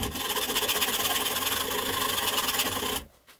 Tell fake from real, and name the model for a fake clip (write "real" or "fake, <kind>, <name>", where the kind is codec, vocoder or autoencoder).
real